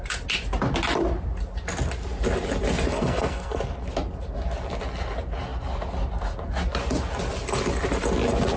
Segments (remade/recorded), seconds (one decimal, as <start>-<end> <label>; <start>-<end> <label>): 0.0-2.9 recorded; 2.9-3.6 remade; 3.6-8.6 recorded